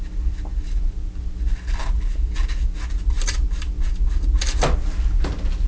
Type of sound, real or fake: real